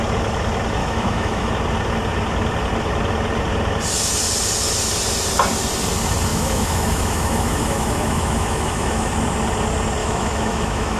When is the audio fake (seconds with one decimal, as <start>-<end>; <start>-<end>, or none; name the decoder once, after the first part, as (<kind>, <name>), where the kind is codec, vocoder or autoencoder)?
0.8-1.5 (autoencoder, DAC-VAE); 6.3-9.1; 10.0-11.0